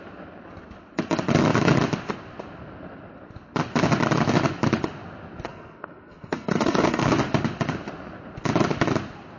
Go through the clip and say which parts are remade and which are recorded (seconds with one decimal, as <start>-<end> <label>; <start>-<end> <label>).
0.0-5.5 recorded; 5.5-7.1 remade; 7.1-9.4 recorded

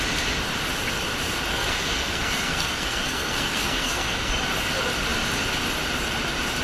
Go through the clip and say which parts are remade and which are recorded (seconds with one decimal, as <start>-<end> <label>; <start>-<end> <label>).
0.0-1.5 recorded; 1.5-4.3 remade; 4.3-6.6 recorded